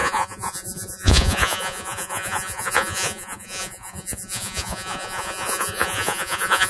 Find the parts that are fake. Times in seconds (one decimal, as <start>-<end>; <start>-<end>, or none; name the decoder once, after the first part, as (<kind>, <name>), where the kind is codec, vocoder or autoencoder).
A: 0.0-6.7 (vocoder, Vocos)